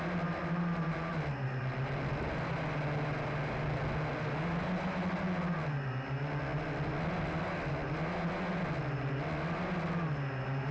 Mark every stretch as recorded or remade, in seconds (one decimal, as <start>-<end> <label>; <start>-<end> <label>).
0.0-0.4 recorded; 0.4-1.1 remade; 1.1-10.7 recorded